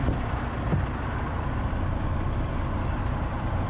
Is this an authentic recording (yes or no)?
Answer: no